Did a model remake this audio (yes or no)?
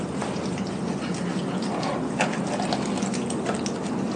no